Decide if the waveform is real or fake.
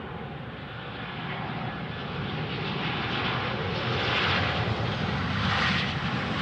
real